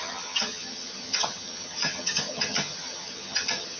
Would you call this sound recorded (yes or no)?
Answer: no